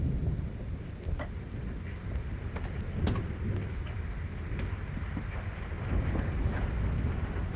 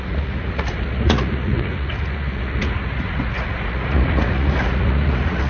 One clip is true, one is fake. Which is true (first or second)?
first